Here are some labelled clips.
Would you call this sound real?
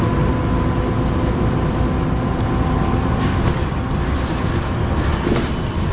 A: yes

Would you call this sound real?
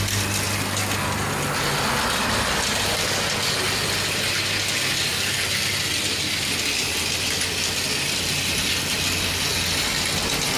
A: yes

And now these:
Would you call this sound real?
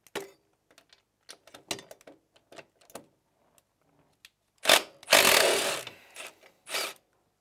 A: yes